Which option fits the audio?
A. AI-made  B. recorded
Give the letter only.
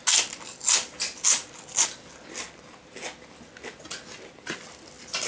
B